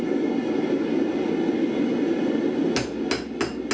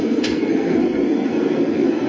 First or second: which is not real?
second